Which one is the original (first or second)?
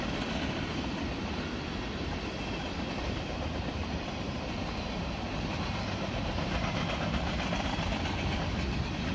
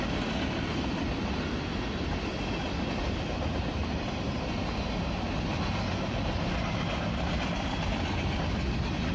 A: second